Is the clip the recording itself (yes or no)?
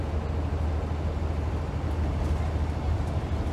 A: yes